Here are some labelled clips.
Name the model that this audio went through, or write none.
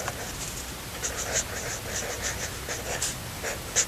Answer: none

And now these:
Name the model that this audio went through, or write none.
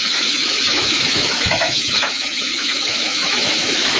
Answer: autoencoder, DAC-VAE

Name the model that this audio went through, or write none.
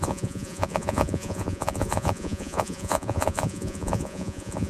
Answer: vocoder, Vocos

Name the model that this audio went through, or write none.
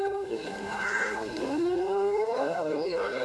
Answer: codec, SNAC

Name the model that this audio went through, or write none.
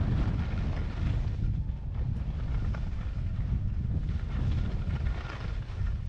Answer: none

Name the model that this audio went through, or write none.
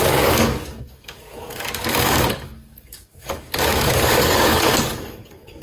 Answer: codec, DAC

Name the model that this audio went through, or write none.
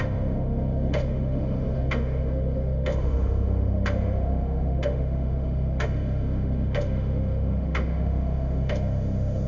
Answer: autoencoder, DAC-VAE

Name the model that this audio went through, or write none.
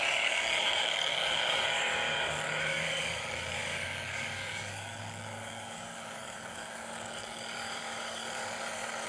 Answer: codec, DAC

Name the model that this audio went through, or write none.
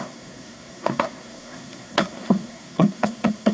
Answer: codec, SNAC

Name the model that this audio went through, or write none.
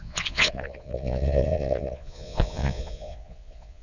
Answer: vocoder, Vocos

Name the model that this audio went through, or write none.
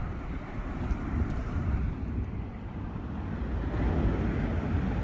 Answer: none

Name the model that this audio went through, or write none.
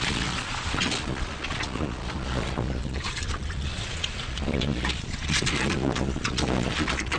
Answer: vocoder, Vocos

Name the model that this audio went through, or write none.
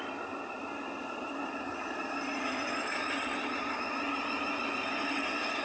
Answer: none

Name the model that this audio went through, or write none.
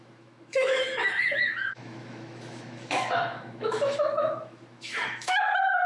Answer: autoencoder, DAC-VAE